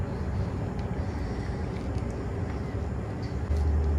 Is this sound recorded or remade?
recorded